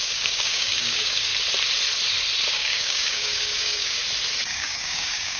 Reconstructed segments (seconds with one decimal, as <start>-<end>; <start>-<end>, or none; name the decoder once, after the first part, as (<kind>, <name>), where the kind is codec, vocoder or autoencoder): 0.0-1.3 (codec, DAC); 2.5-4.0; 4.5-5.4